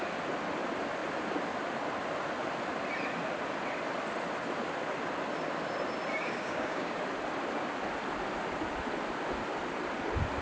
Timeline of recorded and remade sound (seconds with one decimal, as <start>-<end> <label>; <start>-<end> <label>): 0.0-6.1 recorded; 6.1-7.0 remade; 7.0-10.4 recorded